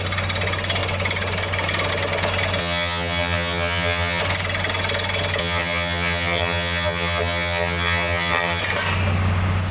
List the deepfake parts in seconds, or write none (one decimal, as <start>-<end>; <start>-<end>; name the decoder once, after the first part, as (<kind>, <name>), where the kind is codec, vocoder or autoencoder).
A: 2.6-4.2 (vocoder, HiFi-GAN); 5.4-8.6

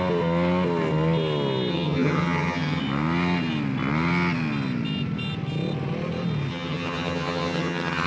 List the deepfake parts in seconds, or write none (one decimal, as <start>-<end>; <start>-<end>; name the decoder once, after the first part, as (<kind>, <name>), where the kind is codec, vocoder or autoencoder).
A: 1.7-2.8 (vocoder, HiFi-GAN); 6.5-8.1